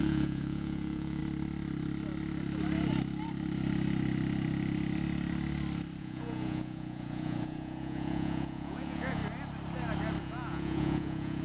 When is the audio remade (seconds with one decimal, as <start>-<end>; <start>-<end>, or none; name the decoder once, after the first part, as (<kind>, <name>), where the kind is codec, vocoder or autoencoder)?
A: 0.0-1.2 (vocoder, Vocos); 6.0-9.2; 10.2-11.4